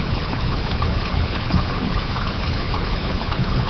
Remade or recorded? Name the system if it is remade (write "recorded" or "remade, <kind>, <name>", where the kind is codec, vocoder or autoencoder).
remade, codec, HILCodec